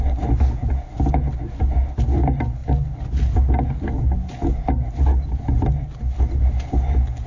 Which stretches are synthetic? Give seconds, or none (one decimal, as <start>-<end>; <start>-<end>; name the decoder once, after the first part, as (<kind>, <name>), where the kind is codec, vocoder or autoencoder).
none